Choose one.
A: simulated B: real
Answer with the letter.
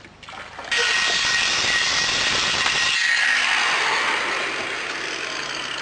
B